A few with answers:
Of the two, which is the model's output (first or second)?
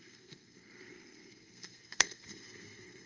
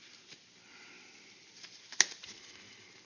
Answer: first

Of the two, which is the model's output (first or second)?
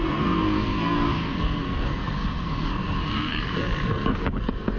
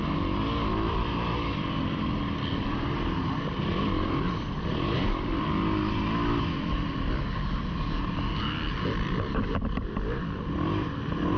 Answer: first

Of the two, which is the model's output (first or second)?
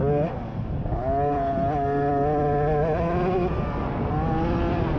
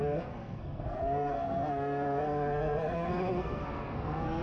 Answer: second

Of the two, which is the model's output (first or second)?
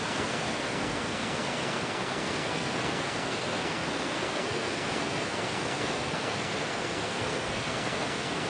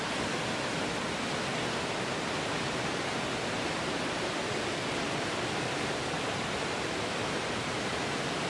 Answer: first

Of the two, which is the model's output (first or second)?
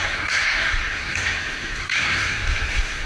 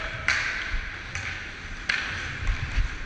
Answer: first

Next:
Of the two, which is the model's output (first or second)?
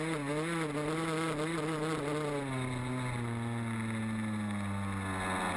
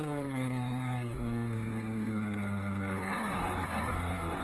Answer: second